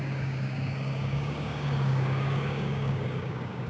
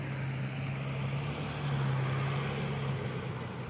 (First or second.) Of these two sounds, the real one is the second